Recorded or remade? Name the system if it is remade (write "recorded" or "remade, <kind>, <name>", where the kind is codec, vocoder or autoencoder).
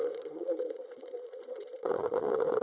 remade, vocoder, Vocos